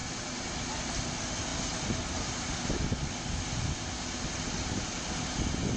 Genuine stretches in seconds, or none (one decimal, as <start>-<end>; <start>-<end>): 0.0-5.8